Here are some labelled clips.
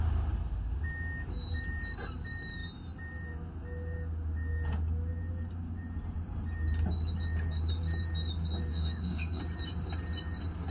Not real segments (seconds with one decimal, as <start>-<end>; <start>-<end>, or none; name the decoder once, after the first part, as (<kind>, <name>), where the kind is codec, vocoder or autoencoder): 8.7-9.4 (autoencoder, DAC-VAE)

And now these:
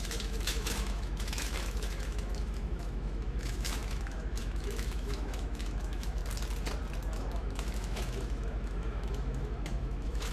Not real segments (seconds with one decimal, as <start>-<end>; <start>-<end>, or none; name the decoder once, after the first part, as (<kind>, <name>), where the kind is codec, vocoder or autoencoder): 0.0-6.2 (autoencoder, DAC-VAE); 7.1-10.3

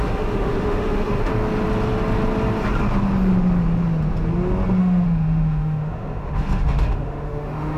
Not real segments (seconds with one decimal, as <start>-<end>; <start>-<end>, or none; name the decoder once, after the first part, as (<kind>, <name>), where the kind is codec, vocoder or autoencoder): 0.0-1.3 (autoencoder, DAC-VAE); 4.8-7.8

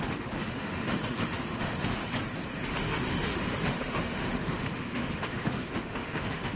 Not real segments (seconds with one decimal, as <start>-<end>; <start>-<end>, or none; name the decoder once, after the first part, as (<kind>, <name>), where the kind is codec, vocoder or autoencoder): 0.0-2.0 (autoencoder, DAC-VAE); 2.7-6.6

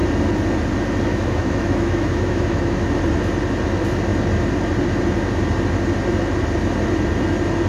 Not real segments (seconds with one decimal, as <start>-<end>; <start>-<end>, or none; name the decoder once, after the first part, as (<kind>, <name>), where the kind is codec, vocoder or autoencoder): 1.1-3.0 (autoencoder, DAC-VAE)